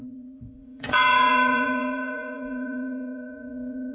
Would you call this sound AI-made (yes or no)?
yes